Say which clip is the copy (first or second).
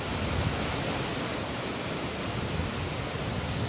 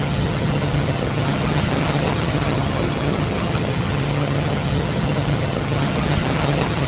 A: second